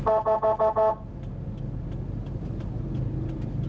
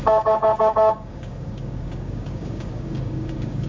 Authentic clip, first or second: first